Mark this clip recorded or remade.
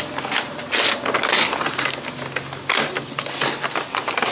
recorded